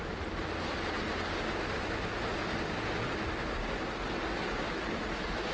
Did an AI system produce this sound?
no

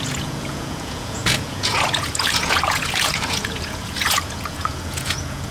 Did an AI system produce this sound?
yes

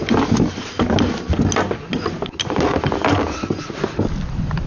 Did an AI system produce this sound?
no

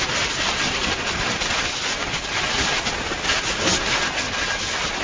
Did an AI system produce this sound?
no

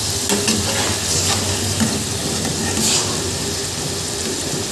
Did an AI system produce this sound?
no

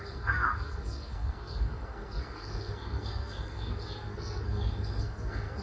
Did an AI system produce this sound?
yes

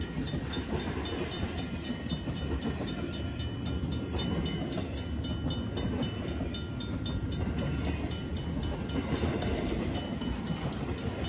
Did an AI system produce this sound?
no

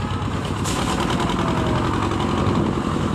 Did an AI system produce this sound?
no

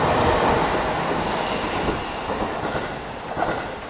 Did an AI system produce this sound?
no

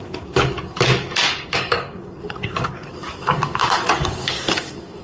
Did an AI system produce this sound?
yes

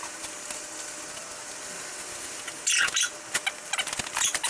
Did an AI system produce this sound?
no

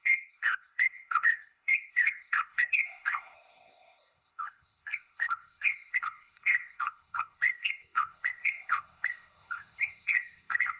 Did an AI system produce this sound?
yes